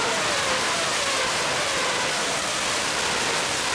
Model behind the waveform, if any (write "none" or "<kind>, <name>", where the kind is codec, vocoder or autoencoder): none